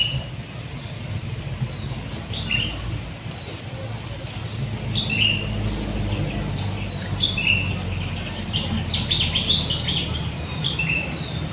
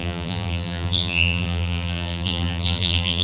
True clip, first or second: first